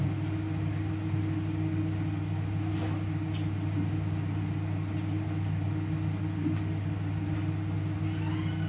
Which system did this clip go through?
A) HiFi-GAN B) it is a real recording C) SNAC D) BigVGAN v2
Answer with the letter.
B